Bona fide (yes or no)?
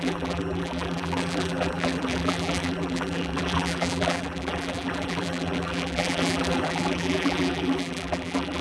no